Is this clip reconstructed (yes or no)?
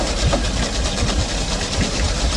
no